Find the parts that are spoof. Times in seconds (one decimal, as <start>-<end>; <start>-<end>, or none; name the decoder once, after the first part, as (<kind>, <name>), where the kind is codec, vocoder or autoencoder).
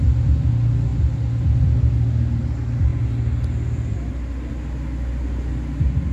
none